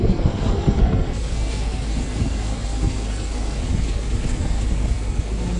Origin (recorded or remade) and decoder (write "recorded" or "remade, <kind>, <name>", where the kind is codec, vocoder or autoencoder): remade, codec, SNAC